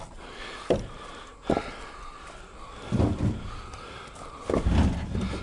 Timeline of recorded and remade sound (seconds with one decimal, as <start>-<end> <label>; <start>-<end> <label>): 0.0-5.4 recorded

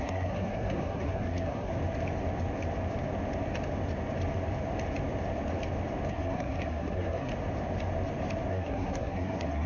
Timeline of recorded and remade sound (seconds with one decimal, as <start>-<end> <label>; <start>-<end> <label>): 0.0-1.7 remade; 1.7-6.1 recorded; 6.1-7.3 remade; 7.3-8.5 recorded; 8.5-9.7 remade

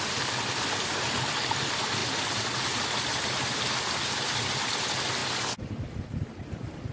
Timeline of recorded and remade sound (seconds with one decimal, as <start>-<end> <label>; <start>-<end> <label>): 0.0-6.9 recorded

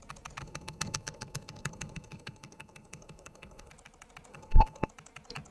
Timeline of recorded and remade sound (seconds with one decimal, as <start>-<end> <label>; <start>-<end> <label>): 0.0-0.4 recorded; 0.4-3.7 remade; 3.7-4.3 recorded; 4.3-4.9 remade; 4.9-5.5 recorded